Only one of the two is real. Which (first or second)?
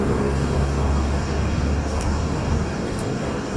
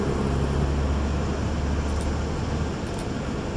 second